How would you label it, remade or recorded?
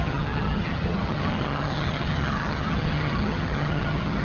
remade